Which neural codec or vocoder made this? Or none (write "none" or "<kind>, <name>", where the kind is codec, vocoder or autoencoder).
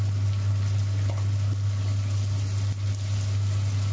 none